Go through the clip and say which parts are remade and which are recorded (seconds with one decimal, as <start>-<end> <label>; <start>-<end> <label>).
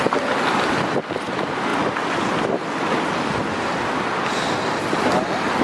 0.0-5.6 recorded